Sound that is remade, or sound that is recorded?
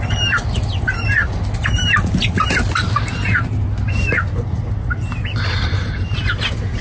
recorded